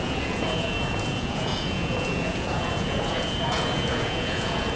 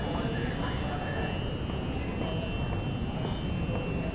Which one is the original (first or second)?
second